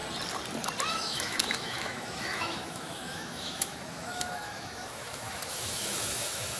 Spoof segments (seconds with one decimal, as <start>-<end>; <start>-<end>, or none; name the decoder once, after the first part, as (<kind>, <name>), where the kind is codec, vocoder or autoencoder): 0.9-6.6 (autoencoder, DAC-VAE)